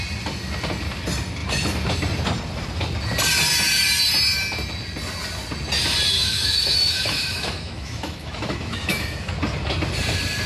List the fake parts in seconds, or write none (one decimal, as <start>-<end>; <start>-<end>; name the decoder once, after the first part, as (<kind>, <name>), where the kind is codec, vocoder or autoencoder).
6.1-9.3 (autoencoder, DAC-VAE)